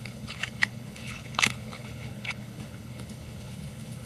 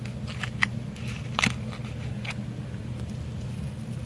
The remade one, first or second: first